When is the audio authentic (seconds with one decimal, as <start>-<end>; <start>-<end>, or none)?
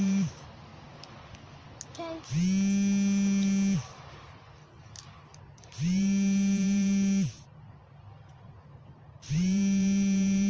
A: 0.7-5.4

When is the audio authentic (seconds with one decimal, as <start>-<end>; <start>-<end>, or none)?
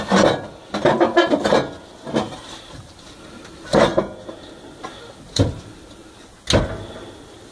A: 3.9-5.5; 6.0-6.6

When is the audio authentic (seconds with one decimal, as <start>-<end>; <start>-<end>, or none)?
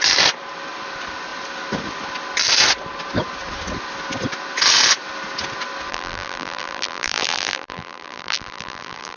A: 0.0-5.9